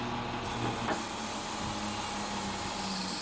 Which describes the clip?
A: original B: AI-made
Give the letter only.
A